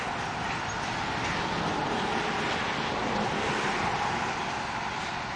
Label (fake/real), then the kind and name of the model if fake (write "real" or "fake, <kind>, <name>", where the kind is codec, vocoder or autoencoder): real